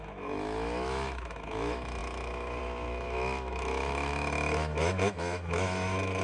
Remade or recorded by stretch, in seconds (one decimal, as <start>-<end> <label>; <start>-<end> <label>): 0.0-6.2 remade